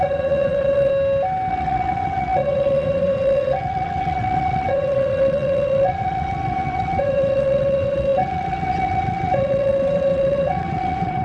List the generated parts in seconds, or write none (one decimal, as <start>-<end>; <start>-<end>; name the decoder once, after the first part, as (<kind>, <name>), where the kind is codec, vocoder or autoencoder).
0.0-0.9 (vocoder, WaveNeXt); 1.5-11.2